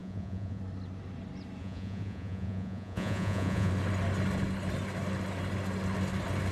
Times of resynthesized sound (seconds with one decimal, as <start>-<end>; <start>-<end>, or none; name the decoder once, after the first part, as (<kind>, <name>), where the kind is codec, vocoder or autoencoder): 0.0-0.6 (vocoder, Vocos); 1.6-3.7